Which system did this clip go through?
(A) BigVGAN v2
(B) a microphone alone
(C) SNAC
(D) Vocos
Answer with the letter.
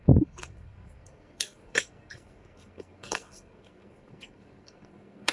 C